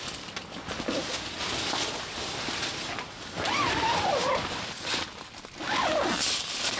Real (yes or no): yes